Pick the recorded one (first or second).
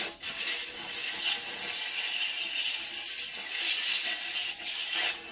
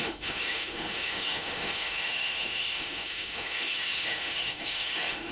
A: first